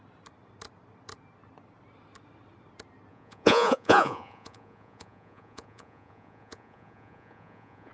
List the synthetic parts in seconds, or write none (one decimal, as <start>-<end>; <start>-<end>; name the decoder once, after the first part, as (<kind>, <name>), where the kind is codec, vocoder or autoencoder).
3.1-7.9 (vocoder, Vocos)